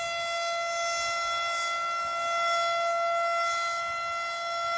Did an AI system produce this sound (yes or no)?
no